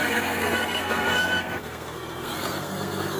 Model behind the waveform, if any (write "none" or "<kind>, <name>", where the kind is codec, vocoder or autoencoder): codec, SNAC